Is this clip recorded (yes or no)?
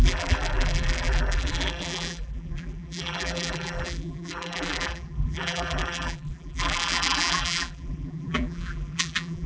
no